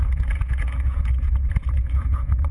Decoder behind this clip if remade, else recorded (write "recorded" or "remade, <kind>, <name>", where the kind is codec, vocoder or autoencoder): remade, vocoder, Vocos